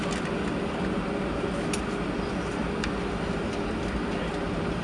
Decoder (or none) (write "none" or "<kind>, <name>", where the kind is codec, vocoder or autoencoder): none